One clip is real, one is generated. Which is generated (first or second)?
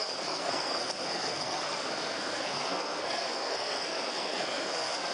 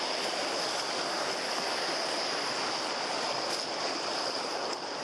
first